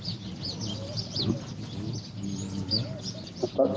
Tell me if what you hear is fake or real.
real